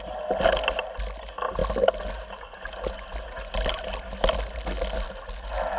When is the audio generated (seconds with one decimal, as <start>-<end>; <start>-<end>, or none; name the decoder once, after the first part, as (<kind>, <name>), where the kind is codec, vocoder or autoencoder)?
none